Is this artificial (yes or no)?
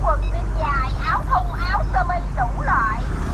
no